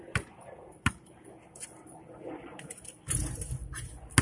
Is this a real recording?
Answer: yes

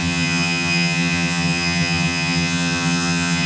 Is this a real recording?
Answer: no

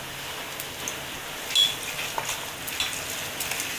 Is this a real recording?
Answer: yes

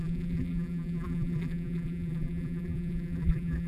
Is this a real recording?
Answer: no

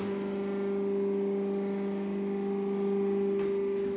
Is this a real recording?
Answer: yes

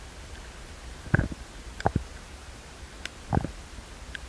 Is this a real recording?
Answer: yes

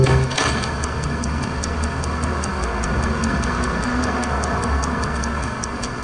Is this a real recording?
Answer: no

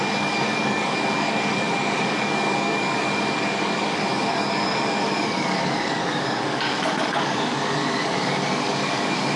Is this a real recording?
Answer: no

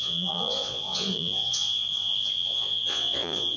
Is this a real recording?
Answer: no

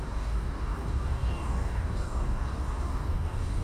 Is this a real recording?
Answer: no